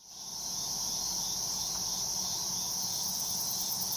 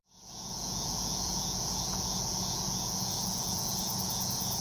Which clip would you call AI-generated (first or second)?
second